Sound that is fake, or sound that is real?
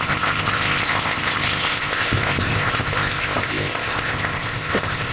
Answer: fake